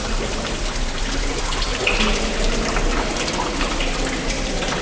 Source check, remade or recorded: recorded